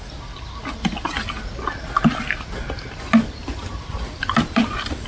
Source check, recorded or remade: recorded